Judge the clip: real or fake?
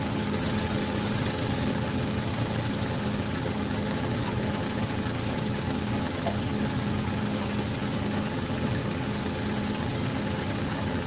fake